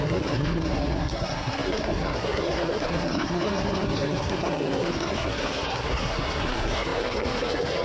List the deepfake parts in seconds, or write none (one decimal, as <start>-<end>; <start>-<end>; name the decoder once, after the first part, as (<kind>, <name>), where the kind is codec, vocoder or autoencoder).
0.0-7.8 (codec, SNAC)